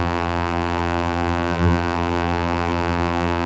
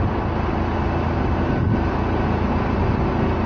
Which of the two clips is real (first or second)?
second